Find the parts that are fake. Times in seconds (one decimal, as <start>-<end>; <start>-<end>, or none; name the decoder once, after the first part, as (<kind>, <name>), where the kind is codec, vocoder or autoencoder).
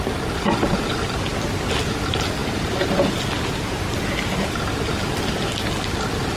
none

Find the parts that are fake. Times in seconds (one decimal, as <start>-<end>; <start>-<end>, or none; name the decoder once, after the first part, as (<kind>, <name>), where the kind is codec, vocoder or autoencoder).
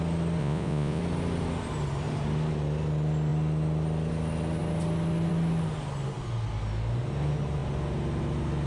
0.4-1.0 (vocoder, Vocos)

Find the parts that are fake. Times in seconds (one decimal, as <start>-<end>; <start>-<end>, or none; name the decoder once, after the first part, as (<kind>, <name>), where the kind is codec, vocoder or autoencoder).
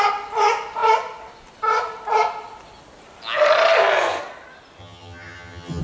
4.8-5.8 (vocoder, HiFi-GAN)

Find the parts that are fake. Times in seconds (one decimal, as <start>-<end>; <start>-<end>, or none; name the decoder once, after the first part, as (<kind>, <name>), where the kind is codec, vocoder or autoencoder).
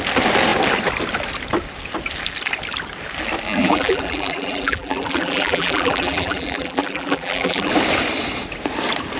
3.6-7.7 (vocoder, BigVGAN v2)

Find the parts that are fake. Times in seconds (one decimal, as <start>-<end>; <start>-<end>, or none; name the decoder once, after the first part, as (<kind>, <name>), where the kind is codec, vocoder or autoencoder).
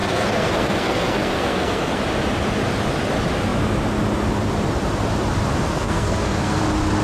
0.0-2.0 (codec, SNAC); 5.7-6.6